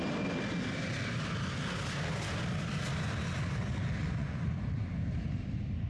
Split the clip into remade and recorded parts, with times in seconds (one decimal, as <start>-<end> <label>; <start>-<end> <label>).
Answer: 0.0-4.0 recorded; 4.0-4.6 remade; 4.6-5.9 recorded